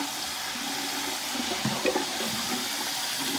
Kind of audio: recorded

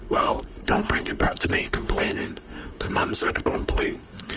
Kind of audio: remade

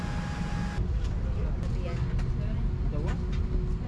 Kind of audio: recorded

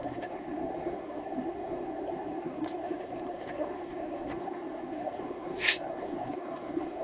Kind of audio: remade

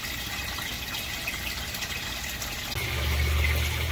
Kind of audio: recorded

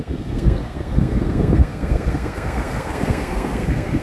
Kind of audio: remade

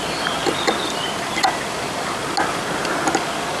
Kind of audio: recorded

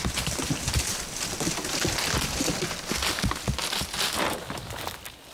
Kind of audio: recorded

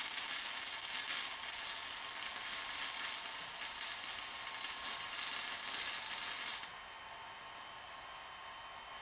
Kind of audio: recorded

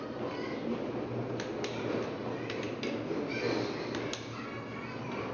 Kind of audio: recorded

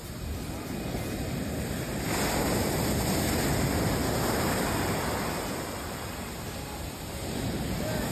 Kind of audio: recorded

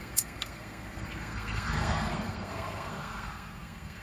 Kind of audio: remade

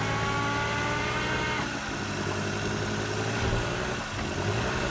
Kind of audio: recorded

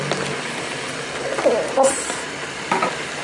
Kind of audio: recorded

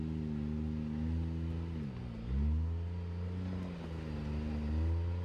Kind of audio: recorded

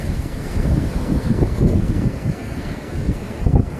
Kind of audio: remade